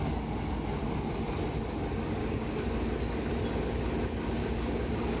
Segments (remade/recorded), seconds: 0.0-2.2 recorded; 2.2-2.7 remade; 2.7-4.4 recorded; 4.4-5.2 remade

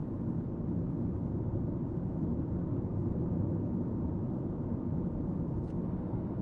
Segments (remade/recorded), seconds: 0.0-6.4 recorded